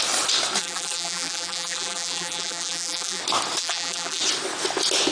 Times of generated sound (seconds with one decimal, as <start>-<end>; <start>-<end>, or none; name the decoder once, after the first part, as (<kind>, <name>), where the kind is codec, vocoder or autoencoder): 0.6-3.2 (vocoder, BigVGAN v2); 3.6-4.2